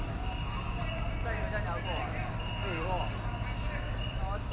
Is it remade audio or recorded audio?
recorded